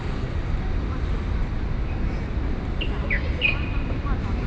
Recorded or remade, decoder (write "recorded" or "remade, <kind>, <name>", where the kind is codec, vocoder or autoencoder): recorded